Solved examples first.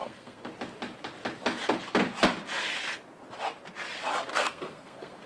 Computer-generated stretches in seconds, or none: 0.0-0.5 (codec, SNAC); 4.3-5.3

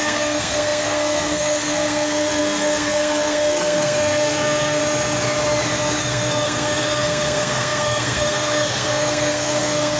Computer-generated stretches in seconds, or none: 0.0-4.8 (codec, SNAC); 6.0-10.0

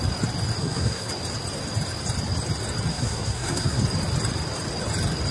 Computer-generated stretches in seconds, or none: 0.6-1.1 (codec, SNAC); 2.9-3.8

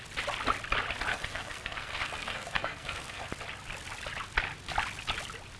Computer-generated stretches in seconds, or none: 1.1-3.3 (codec, SNAC)

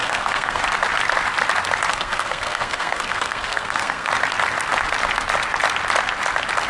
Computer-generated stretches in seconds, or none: 0.0-0.6 (codec, SNAC); 1.9-4.1

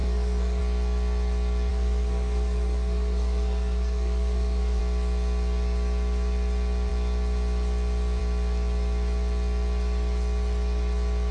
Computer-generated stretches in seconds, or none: 0.0-0.6 (codec, SNAC); 1.7-4.8